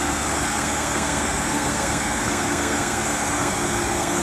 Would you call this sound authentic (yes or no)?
no